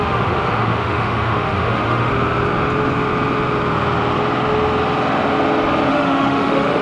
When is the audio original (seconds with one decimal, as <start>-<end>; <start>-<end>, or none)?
2.1-5.9